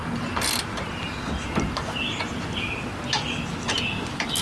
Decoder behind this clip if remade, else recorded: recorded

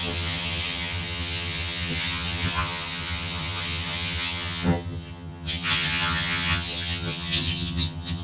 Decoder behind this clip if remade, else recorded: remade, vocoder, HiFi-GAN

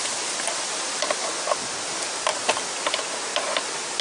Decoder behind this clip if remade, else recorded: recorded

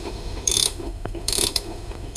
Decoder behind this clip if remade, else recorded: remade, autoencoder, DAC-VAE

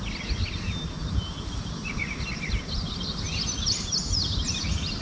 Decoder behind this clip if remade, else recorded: recorded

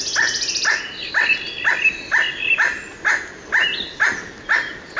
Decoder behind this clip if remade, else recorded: recorded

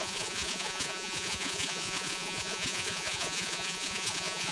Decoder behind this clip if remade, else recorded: remade, vocoder, Vocos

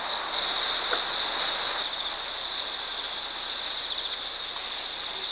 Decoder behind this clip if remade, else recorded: recorded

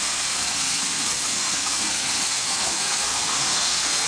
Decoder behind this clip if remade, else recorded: remade, codec, SNAC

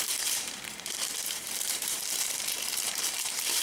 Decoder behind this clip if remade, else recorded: remade, vocoder, BigVGAN v2